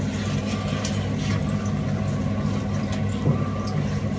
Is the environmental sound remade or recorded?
recorded